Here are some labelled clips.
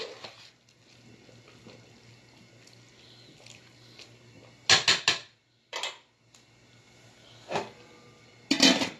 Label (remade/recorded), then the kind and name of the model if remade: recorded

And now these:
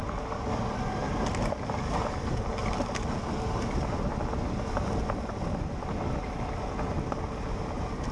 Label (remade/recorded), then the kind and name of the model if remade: recorded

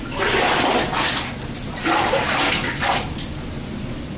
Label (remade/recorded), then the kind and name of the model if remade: recorded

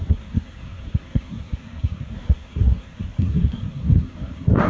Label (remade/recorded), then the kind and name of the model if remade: remade, codec, SNAC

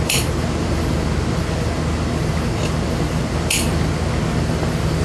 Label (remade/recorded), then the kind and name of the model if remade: recorded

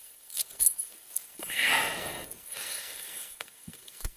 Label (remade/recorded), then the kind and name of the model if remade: remade, codec, SNAC